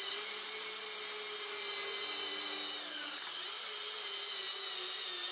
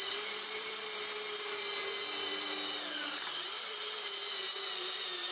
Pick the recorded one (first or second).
first